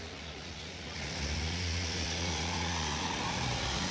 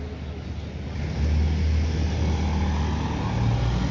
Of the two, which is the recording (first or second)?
second